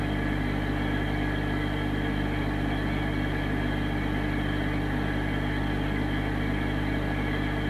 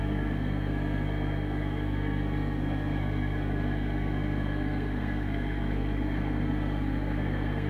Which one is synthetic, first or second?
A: second